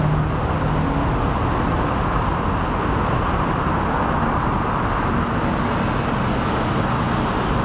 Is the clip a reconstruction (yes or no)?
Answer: no